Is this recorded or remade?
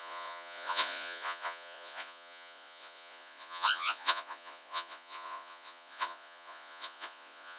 remade